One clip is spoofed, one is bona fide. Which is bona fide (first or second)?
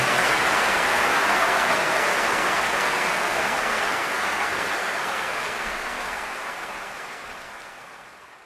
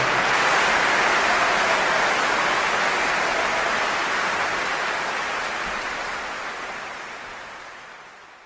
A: second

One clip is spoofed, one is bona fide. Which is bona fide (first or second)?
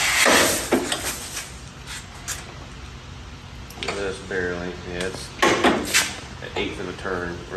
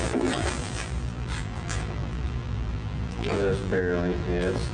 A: first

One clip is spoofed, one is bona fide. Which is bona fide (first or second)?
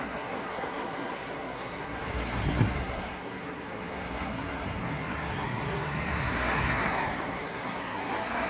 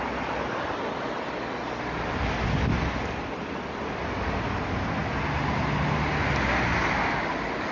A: second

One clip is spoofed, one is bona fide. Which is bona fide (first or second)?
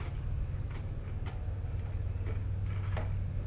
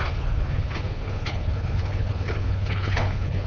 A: first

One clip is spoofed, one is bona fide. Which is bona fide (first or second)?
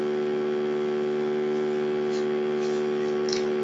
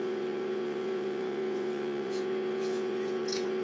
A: first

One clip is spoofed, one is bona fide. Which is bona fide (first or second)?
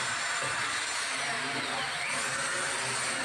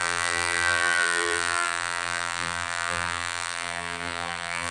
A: first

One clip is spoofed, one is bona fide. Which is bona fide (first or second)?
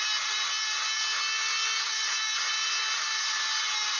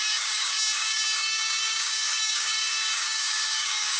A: first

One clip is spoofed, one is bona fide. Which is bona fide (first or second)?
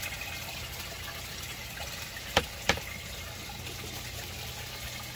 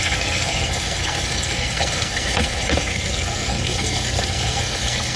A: first